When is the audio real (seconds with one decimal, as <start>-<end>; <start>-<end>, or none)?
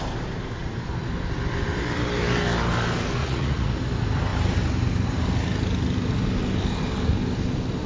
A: 0.0-3.2; 3.7-7.9